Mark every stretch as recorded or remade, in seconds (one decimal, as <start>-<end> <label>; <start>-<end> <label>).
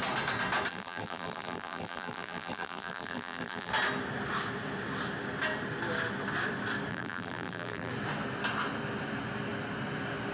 0.0-0.7 recorded; 0.7-3.7 remade; 3.7-6.9 recorded; 6.9-7.9 remade; 7.9-10.3 recorded